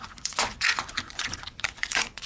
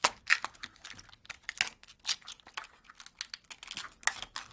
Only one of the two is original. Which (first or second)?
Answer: second